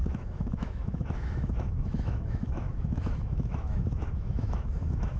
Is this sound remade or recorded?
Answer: remade